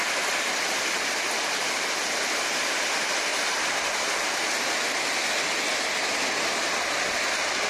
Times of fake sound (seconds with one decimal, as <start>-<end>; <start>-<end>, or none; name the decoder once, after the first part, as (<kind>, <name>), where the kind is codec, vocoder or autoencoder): none